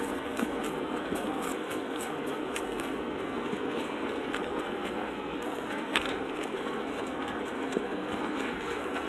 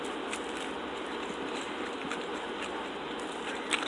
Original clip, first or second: second